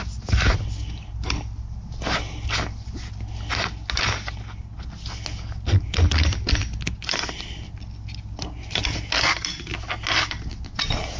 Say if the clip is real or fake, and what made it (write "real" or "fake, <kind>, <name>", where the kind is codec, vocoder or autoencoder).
real